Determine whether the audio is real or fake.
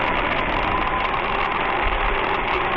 real